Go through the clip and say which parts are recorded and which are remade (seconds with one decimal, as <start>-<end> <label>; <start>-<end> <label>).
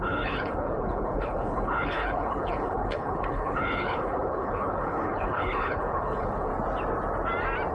0.0-6.5 remade; 6.5-7.7 recorded